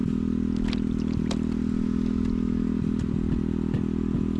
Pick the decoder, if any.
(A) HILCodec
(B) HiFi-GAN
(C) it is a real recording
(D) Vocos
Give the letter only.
C